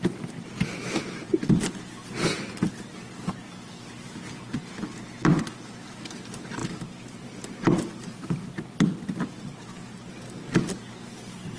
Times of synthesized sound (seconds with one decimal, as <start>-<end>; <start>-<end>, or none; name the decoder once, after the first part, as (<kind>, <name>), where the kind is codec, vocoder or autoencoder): none